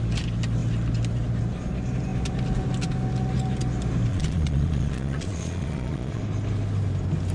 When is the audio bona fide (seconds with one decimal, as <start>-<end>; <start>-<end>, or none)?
0.0-4.1; 6.2-7.3